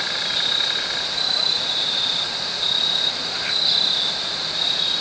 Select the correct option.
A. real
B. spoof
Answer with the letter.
A